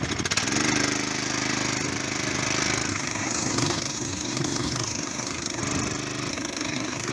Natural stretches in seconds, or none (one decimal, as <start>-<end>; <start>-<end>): 0.0-2.9; 5.6-6.3